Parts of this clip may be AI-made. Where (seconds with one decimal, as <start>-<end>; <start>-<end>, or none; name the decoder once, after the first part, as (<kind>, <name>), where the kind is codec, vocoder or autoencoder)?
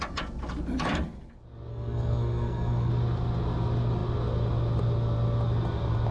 1.7-2.9 (codec, SNAC)